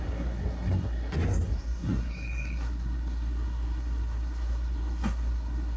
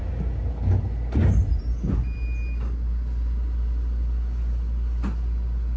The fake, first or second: first